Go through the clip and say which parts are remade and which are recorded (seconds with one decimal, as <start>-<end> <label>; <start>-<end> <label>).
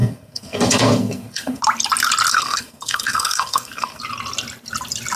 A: 0.0-1.6 remade; 1.6-2.3 recorded; 2.3-4.0 remade; 4.0-5.2 recorded